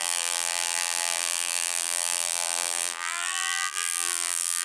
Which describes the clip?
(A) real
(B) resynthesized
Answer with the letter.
B